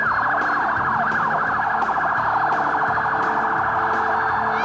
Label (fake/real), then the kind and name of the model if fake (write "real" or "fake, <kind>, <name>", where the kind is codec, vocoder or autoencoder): real